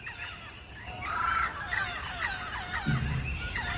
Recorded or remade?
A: recorded